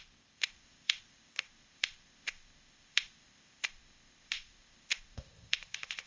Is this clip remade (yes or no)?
yes